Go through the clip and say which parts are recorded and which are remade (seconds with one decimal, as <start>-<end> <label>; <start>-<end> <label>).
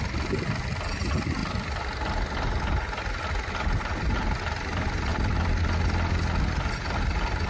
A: 0.0-7.5 recorded